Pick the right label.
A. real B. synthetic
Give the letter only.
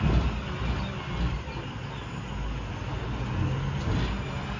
A